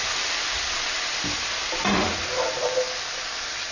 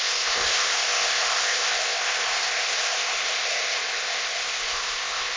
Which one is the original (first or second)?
first